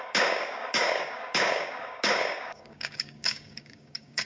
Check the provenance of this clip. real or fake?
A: fake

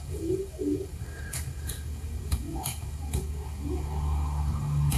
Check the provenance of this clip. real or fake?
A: fake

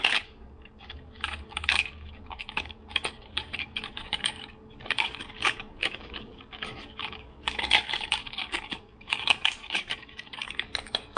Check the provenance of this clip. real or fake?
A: fake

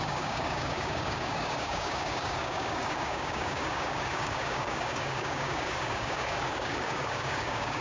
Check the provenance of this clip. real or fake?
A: fake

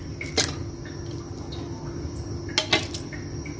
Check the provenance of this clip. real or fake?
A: real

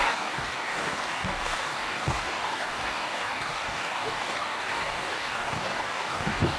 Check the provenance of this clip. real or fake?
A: fake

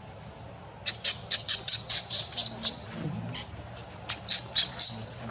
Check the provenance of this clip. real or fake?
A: real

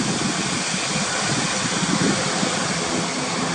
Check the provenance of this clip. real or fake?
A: real